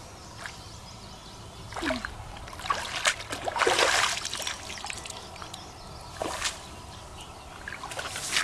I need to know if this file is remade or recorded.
recorded